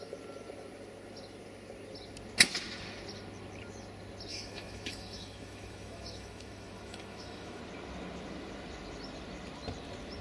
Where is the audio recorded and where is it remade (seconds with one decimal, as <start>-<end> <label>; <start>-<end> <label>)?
0.0-4.3 recorded; 4.3-7.6 remade; 7.6-10.2 recorded